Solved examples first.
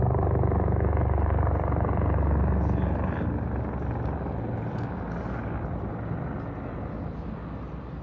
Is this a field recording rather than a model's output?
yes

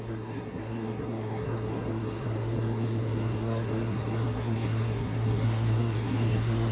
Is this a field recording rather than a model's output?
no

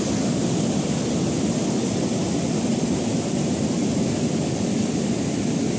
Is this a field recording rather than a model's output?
yes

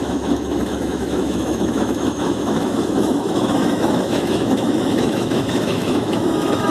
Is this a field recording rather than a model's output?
no